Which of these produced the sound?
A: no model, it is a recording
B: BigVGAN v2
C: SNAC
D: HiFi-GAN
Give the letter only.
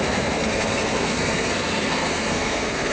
C